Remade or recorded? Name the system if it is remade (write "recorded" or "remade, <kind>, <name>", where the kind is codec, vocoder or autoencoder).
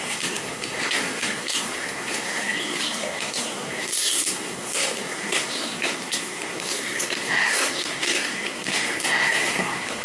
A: remade, codec, SNAC